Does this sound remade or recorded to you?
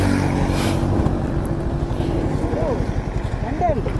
recorded